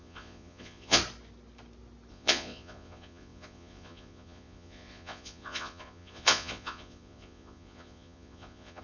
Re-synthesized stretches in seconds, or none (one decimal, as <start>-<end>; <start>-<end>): 0.0-1.0; 2.1-8.8